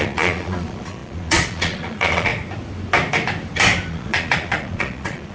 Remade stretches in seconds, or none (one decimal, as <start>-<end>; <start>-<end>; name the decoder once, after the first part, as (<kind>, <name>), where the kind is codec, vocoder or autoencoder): 0.0-2.3 (vocoder, Vocos); 3.9-5.3